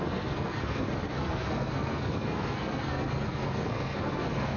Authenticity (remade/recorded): remade